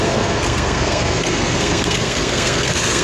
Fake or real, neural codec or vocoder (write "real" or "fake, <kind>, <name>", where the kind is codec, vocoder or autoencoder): fake, codec, SNAC